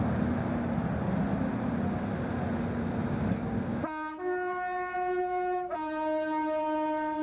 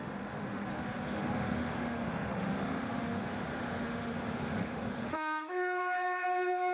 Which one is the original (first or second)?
first